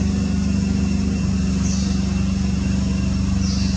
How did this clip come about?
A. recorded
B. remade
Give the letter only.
A